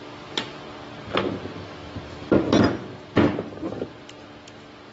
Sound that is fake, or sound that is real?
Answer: real